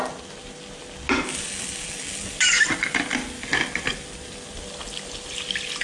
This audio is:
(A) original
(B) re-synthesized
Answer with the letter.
A